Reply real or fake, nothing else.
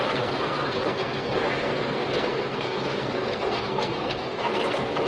fake